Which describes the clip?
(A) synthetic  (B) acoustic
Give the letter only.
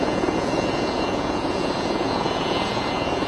A